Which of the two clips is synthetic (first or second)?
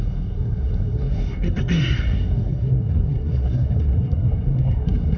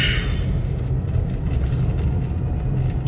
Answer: first